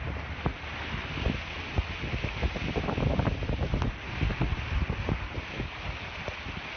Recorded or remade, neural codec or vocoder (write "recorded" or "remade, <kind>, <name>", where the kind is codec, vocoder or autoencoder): recorded